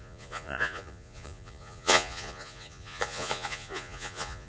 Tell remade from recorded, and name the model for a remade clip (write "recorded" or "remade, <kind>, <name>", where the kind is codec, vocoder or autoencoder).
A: remade, vocoder, Vocos